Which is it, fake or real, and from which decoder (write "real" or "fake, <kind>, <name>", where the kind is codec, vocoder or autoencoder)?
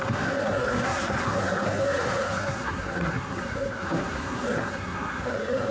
fake, codec, SNAC